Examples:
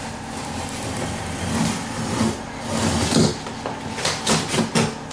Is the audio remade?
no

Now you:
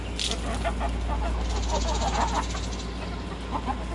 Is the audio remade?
no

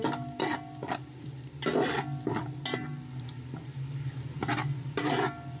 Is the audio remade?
no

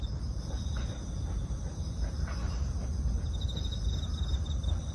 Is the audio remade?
yes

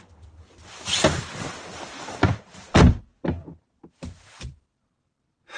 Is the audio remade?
no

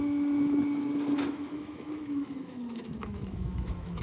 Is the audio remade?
yes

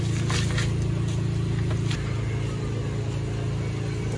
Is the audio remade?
no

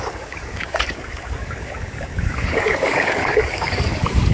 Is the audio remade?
yes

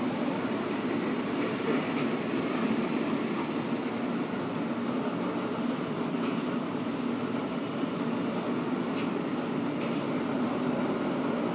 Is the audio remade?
no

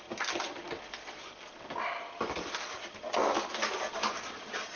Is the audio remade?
no